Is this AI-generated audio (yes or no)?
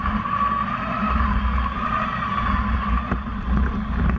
no